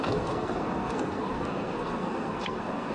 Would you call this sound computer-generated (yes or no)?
yes